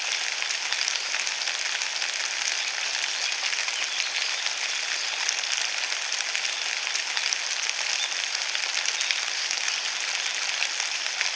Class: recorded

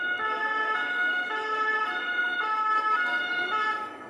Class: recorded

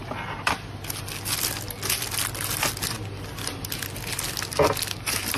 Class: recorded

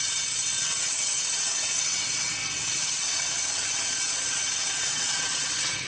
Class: remade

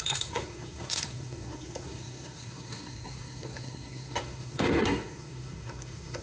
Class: remade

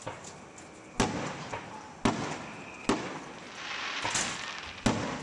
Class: recorded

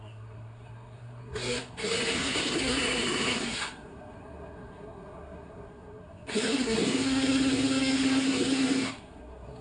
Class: remade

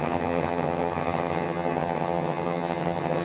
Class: remade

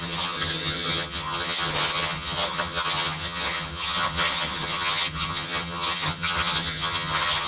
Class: remade